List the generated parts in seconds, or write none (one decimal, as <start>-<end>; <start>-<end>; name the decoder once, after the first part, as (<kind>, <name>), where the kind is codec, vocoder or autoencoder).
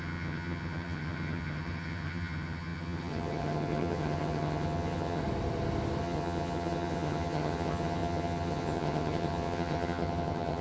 0.0-5.2 (vocoder, HiFi-GAN); 6.0-10.6